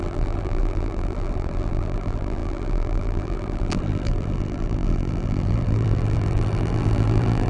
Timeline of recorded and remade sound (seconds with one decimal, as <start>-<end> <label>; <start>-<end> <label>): 0.0-7.5 remade